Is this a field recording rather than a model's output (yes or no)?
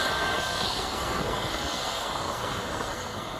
no